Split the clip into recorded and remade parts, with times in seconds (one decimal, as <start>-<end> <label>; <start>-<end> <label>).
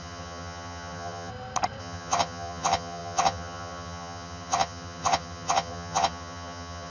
0.0-1.3 remade; 1.3-1.8 recorded; 1.8-6.9 remade